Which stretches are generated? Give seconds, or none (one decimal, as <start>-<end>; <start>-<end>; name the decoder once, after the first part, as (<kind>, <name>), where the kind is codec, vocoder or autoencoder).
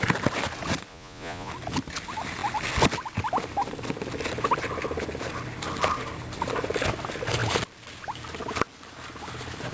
0.9-1.5 (vocoder, Vocos)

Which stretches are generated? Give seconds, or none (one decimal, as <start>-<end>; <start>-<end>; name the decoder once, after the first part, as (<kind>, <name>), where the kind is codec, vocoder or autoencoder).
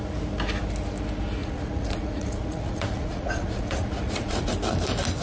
1.4-4.5 (vocoder, Vocos)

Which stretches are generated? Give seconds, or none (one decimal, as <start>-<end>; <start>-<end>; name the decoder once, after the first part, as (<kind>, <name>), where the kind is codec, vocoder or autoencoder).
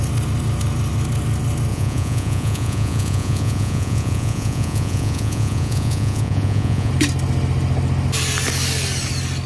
1.7-6.9 (vocoder, Vocos)